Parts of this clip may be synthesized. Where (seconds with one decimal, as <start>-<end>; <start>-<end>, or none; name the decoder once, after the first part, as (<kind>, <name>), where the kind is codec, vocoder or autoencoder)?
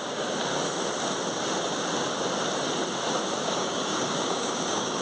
0.0-0.4 (codec, DAC); 3.4-5.0